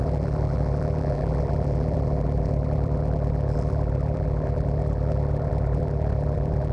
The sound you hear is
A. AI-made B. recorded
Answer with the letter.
A